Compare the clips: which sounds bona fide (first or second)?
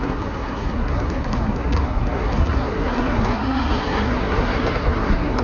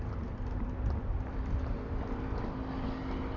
second